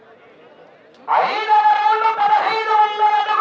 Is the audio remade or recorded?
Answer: recorded